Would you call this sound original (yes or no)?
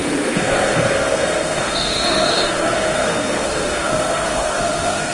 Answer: no